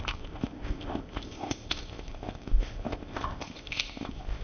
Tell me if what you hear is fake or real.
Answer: fake